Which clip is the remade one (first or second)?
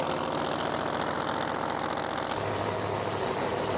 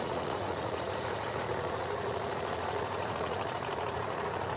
second